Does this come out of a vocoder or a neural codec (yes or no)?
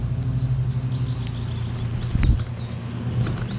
no